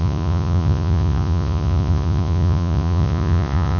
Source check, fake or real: fake